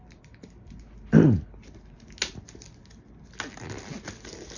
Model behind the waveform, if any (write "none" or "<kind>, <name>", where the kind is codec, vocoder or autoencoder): none